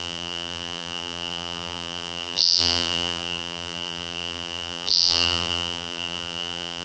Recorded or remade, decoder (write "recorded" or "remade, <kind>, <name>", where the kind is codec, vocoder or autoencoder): remade, vocoder, BigVGAN v2